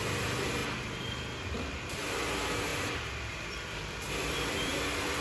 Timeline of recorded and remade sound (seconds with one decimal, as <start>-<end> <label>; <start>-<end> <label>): 0.0-2.7 recorded; 2.7-5.2 remade